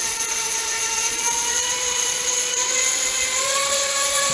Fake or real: fake